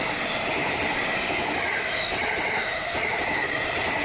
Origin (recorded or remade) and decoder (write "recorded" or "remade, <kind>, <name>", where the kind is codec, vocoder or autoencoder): recorded